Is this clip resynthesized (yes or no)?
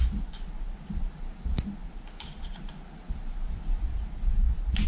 no